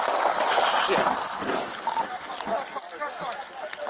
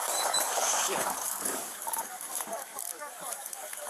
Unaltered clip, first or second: first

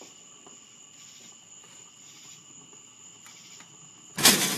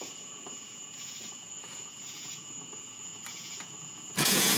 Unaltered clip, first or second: first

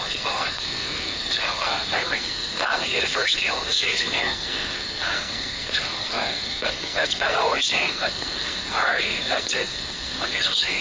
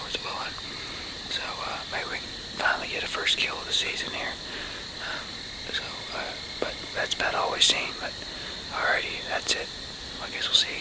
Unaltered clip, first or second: second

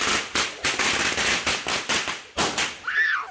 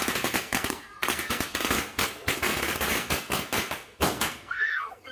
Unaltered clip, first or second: first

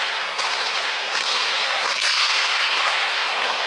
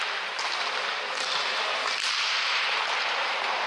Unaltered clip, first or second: second